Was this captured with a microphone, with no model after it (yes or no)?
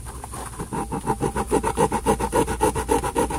yes